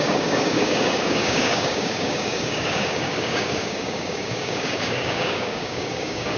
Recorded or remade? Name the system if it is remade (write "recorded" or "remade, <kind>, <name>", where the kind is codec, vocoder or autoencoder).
remade, codec, DAC